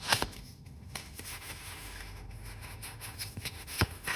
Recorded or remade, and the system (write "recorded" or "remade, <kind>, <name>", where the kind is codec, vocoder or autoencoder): remade, autoencoder, DAC-VAE